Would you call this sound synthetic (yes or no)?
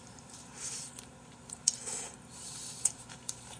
yes